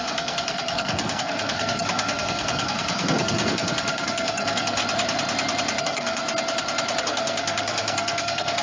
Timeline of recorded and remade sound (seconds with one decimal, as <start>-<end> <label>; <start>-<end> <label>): 0.0-4.8 remade; 4.8-5.8 recorded; 5.8-6.2 remade; 6.2-7.0 recorded; 7.0-8.6 remade